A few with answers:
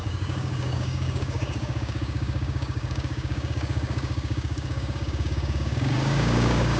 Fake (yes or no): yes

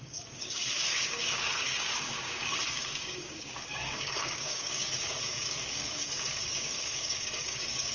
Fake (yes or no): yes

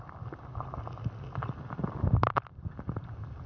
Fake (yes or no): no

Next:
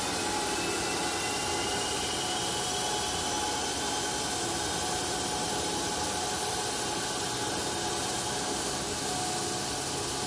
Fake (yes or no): no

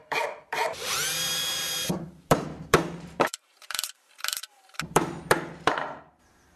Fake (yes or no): yes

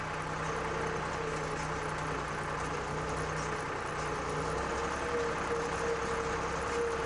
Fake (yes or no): no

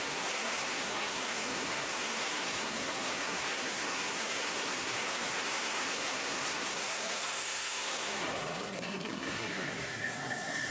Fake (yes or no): yes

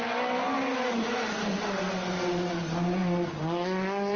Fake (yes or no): no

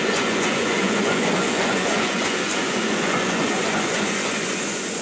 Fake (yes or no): yes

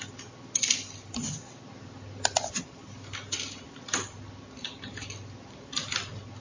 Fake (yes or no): no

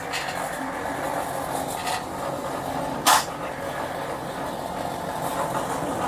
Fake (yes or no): no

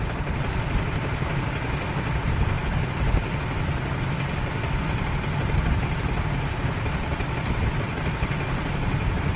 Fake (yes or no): no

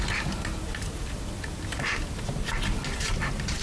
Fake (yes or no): no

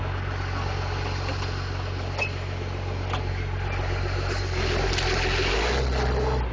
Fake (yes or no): no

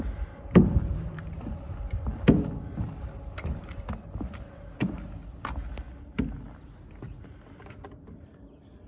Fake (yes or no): no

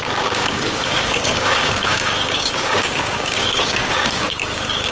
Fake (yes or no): yes